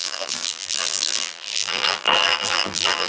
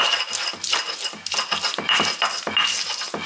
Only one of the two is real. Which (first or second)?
second